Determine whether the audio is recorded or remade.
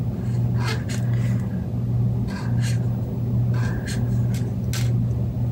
recorded